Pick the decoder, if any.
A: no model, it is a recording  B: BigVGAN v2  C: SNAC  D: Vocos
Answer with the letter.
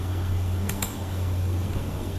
C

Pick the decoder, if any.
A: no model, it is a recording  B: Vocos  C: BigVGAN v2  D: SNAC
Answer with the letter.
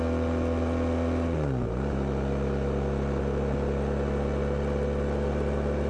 A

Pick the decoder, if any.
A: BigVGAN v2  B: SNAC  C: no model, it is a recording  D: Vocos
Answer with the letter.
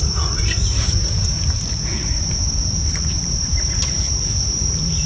A